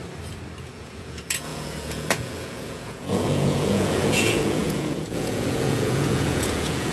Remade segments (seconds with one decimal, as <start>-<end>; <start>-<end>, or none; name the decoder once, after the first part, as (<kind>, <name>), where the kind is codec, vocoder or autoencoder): 0.6-6.9 (vocoder, Vocos)